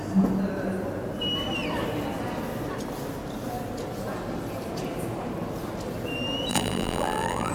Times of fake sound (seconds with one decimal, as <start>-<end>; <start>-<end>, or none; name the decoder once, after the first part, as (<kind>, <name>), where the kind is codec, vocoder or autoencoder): 6.5-7.5 (vocoder, BigVGAN v2)